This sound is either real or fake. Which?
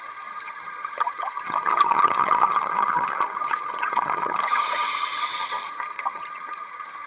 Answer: fake